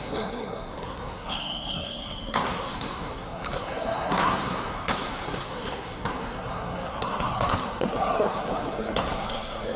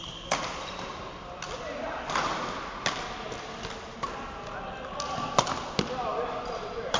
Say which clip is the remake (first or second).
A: first